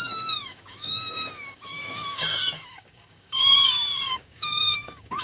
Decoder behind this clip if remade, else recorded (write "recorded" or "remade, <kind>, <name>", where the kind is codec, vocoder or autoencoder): remade, codec, DAC